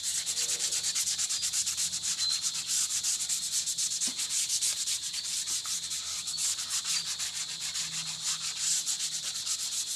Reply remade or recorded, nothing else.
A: recorded